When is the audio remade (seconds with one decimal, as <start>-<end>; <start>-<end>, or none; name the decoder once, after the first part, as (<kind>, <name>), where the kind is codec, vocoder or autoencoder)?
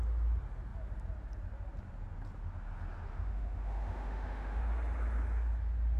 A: 3.1-4.6 (autoencoder, DAC-VAE)